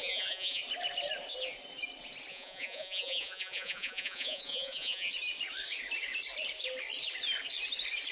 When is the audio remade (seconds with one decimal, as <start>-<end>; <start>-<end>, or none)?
0.0-0.6; 2.3-5.1